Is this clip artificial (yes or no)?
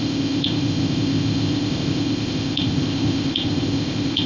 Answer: yes